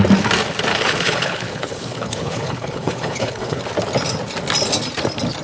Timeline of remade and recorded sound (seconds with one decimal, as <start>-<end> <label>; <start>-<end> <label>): 0.0-0.7 recorded; 0.7-3.6 remade; 3.6-5.4 recorded